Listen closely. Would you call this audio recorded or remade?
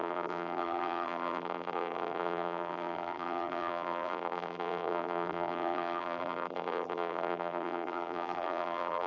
remade